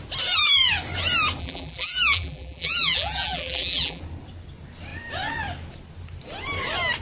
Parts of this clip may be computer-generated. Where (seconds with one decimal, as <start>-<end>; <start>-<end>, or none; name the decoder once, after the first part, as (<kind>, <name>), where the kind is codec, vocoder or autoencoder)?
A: 1.4-4.0 (vocoder, BigVGAN v2)